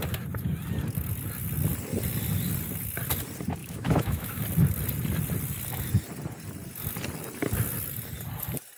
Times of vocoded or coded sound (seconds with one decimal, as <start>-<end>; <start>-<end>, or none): 3.6-4.4